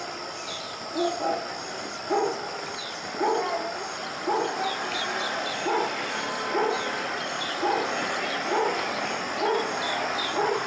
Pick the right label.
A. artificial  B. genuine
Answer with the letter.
B